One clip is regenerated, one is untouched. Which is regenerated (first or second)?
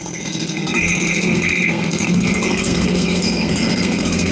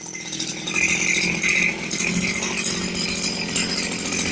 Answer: first